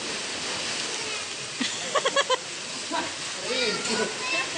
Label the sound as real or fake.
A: real